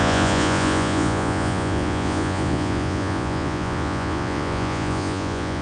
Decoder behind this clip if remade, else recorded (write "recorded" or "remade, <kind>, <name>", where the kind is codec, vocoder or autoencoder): remade, vocoder, Vocos